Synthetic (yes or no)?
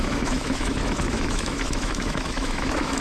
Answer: yes